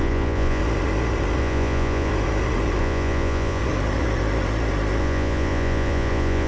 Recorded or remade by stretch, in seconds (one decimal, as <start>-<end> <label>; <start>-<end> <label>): 0.0-0.6 remade; 0.6-1.4 recorded; 1.4-2.1 remade; 2.1-2.8 recorded; 2.8-3.6 remade; 3.6-5.0 recorded; 5.0-6.5 remade